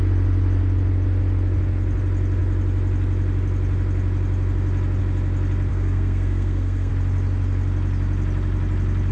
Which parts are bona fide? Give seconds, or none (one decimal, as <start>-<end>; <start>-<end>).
0.0-5.7; 6.9-9.1